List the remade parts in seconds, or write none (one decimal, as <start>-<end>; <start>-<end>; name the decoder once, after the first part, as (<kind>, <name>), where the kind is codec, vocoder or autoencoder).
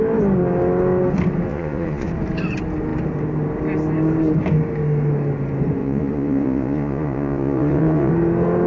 1.5-2.1 (vocoder, Vocos); 5.8-8.1